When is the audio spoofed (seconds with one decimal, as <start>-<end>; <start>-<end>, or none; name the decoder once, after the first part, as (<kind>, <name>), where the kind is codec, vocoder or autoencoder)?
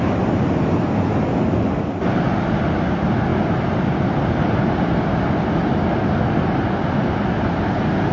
3.3-5.3 (vocoder, BigVGAN v2)